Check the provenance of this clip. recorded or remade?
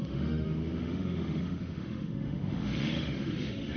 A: remade